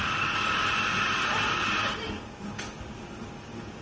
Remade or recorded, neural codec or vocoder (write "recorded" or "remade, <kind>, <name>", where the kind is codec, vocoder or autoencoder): recorded